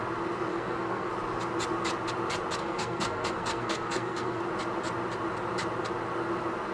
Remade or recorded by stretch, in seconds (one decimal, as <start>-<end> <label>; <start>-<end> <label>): 0.0-0.5 recorded; 0.5-1.1 remade; 1.1-2.6 recorded; 2.6-4.4 remade; 4.4-6.7 recorded